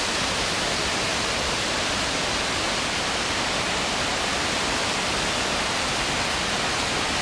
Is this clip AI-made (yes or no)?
no